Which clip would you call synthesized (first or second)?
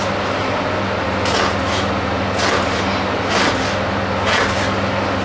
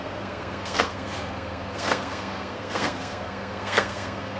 second